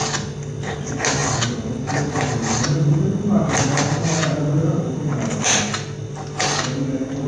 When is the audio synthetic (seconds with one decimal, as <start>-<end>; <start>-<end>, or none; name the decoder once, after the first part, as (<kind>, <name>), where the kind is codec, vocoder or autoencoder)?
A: 4.6-5.6 (vocoder, BigVGAN v2)